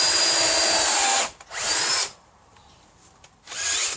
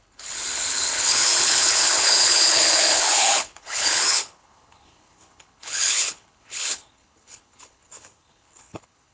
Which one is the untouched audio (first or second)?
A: first